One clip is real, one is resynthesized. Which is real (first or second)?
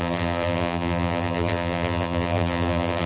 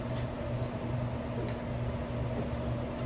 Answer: second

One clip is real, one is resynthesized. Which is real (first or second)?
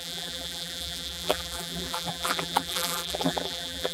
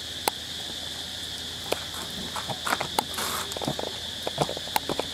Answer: second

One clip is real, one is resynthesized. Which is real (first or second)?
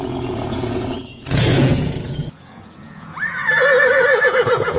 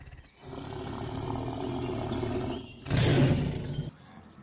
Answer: second